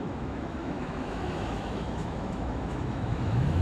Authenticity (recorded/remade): remade